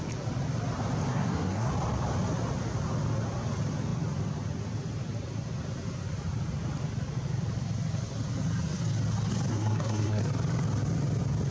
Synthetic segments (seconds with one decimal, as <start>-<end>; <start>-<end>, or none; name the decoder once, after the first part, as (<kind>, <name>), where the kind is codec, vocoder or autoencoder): 1.1-1.7 (codec, SNAC); 9.5-10.2

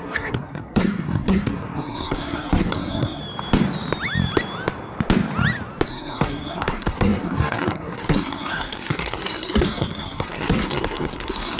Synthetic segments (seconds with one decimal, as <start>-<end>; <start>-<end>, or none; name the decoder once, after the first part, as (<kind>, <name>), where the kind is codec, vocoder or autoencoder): 0.0-3.2 (codec, SNAC); 5.9-11.6

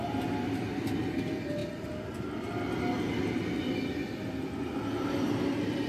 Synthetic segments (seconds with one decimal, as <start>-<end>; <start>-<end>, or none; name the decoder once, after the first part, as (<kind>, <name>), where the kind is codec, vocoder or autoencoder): none

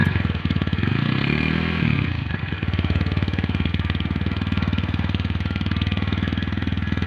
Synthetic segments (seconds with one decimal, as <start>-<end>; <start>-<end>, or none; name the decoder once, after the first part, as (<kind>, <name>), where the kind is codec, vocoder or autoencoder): 0.0-7.1 (codec, SNAC)

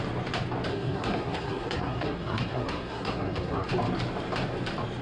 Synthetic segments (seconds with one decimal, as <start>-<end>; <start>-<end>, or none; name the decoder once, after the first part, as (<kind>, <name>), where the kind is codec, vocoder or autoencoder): 0.7-3.7 (codec, SNAC)

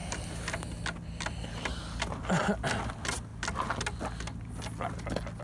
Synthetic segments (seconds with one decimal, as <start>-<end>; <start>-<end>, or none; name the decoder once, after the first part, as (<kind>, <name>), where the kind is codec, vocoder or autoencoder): none

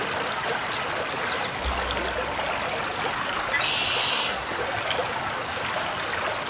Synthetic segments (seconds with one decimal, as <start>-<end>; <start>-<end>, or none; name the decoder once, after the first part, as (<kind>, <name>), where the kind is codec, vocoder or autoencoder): 4.1-4.6 (codec, SNAC)

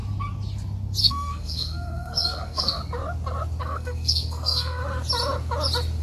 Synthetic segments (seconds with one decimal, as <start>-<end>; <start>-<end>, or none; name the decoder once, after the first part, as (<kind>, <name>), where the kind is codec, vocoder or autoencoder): 1.0-2.8 (codec, SNAC); 3.6-4.8